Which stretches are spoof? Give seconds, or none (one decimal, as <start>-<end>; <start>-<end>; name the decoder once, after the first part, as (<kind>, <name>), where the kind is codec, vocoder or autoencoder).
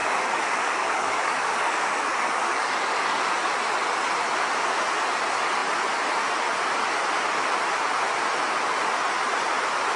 0.0-3.3 (codec, DAC)